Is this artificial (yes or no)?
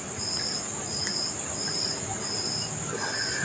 no